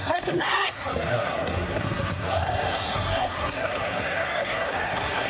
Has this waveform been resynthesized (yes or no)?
yes